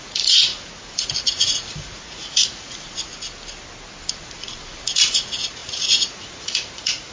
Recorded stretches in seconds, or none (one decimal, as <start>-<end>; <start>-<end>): 0.5-1.2; 3.1-4.1